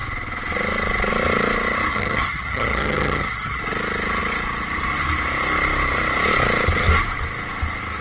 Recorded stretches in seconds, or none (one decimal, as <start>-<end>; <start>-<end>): 0.0-1.9; 3.6-8.0